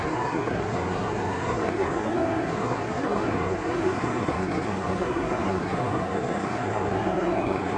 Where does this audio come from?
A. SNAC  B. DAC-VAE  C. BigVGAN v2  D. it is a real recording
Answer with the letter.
A